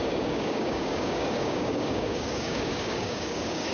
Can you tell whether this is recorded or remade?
remade